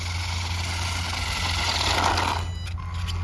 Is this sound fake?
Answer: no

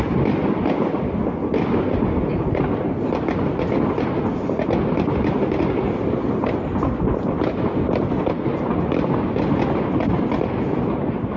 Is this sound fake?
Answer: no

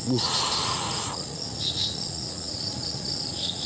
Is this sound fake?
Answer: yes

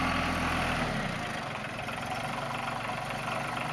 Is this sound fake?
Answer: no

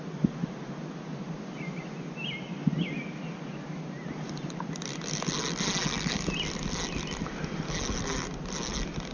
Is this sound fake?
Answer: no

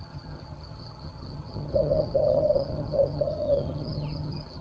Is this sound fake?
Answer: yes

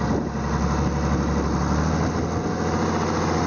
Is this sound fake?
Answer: no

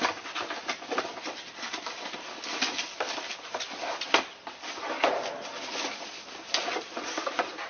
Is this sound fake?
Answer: no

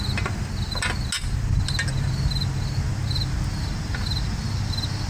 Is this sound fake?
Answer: no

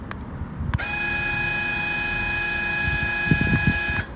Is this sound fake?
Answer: no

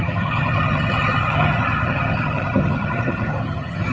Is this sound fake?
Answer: yes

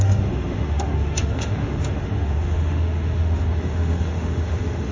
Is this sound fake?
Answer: yes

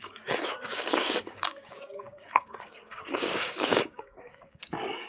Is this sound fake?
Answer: yes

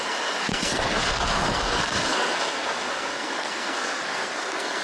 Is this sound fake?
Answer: yes